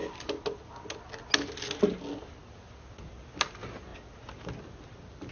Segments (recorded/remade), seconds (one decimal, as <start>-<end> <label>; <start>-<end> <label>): 0.0-5.3 recorded